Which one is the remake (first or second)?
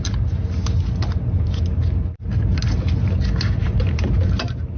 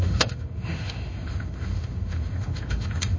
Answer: second